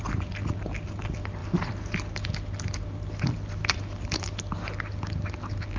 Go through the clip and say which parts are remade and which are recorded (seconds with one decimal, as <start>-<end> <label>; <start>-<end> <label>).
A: 0.0-5.8 recorded